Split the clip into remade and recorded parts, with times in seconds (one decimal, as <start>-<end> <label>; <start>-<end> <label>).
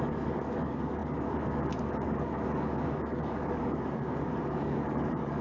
0.0-5.4 remade